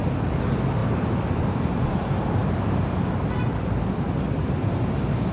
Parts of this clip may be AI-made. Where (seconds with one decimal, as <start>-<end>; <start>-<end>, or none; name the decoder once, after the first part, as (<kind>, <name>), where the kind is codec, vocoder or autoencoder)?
0.8-1.8 (vocoder, BigVGAN v2)